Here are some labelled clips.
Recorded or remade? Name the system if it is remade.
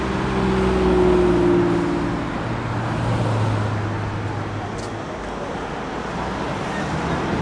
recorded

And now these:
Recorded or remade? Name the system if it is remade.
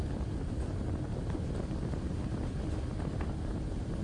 recorded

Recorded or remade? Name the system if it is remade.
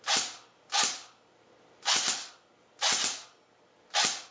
recorded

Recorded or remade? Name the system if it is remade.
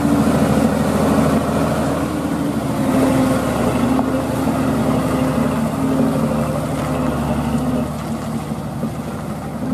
recorded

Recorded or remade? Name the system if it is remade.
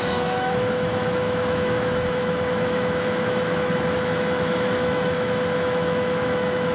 remade, autoencoder, DAC-VAE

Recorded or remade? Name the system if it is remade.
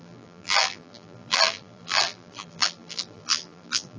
remade, vocoder, BigVGAN v2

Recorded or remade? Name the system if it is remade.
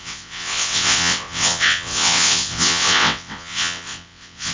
remade, vocoder, WaveNeXt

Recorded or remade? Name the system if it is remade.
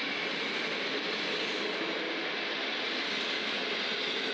recorded